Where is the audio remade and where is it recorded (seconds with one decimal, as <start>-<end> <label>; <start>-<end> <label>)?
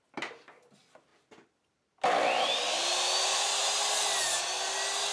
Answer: 0.0-5.1 recorded